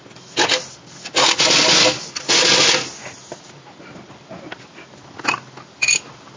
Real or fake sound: real